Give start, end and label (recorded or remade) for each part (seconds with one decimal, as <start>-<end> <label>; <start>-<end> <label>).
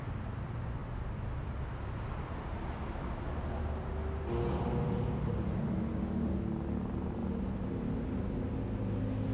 0.0-5.9 recorded; 5.9-6.4 remade; 6.4-9.3 recorded